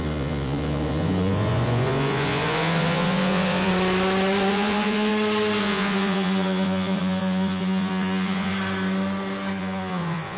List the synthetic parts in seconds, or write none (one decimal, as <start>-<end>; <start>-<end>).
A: 0.0-3.7; 4.5-5.1; 5.6-8.5; 9.6-10.4